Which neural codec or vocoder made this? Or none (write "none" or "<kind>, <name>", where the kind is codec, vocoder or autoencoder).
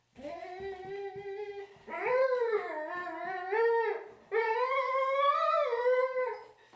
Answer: none